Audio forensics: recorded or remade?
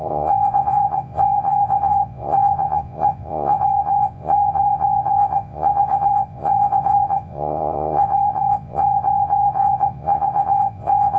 remade